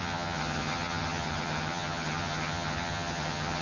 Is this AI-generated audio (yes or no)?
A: yes